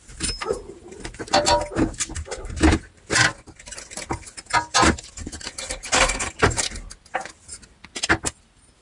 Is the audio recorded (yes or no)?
yes